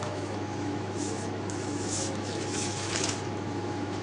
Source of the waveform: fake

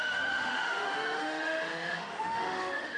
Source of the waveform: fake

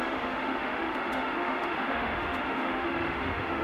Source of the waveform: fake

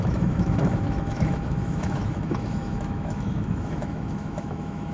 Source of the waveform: fake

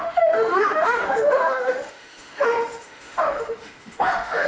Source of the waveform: fake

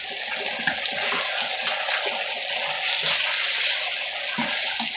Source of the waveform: real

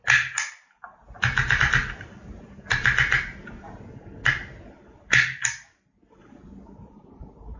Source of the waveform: real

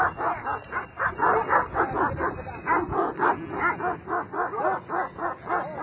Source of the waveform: real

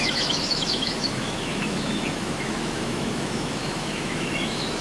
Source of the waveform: fake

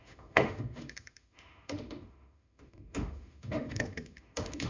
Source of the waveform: fake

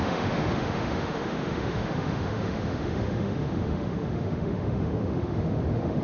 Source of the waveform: fake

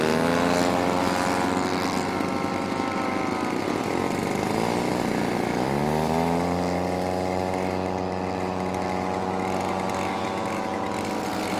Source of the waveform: real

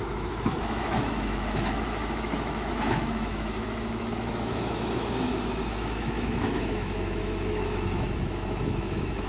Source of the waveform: fake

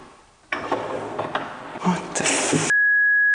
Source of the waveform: real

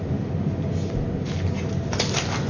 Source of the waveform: real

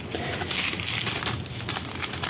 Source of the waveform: real